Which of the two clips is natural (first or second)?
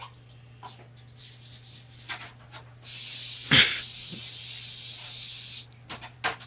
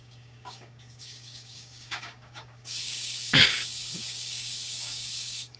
first